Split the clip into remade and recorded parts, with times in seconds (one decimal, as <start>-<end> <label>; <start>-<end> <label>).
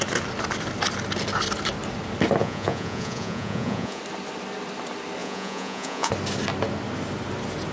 0.0-2.4 recorded; 2.4-4.0 remade; 4.0-5.2 recorded; 5.2-6.1 remade; 6.1-7.7 recorded